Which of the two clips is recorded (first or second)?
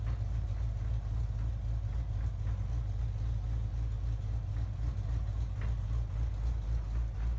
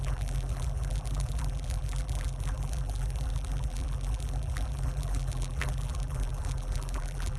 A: first